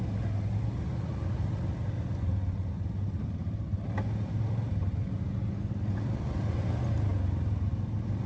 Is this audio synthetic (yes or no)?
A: no